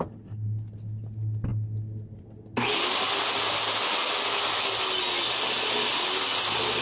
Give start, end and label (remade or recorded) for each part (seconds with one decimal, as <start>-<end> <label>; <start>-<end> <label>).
0.0-6.8 recorded